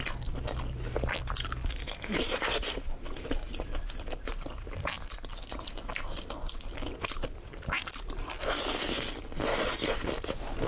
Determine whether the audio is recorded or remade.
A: recorded